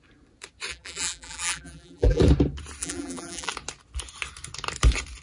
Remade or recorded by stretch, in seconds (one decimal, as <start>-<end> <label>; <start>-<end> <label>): 0.0-0.7 recorded; 0.7-2.2 remade; 2.2-2.8 recorded; 2.8-3.5 remade; 3.5-5.2 recorded